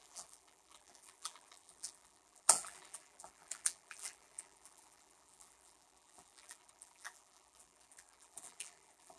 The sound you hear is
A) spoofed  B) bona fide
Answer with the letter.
A